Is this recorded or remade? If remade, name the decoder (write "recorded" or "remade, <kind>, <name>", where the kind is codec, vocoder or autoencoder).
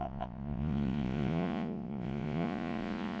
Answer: remade, vocoder, Vocos